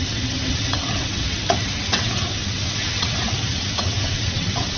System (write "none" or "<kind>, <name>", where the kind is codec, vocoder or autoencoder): vocoder, WaveNeXt